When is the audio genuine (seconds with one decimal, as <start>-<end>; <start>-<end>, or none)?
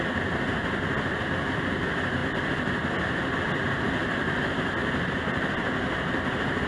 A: 0.0-6.7